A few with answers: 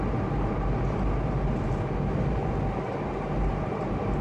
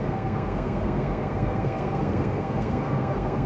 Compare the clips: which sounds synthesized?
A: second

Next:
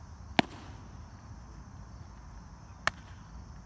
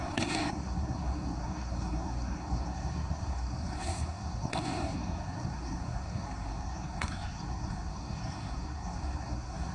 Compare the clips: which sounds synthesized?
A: second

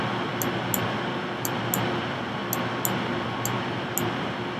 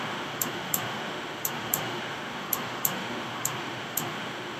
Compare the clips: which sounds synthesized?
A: second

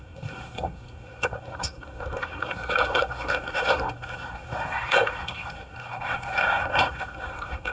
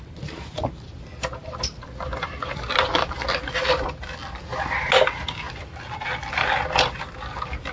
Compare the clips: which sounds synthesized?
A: first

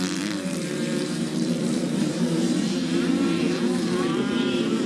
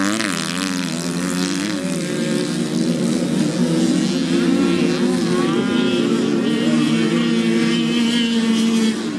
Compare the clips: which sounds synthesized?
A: first